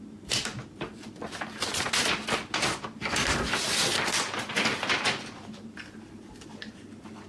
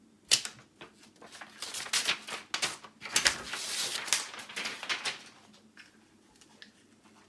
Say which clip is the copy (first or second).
first